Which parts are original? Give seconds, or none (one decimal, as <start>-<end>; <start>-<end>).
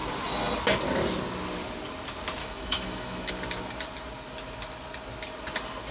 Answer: 0.0-2.4; 3.3-5.9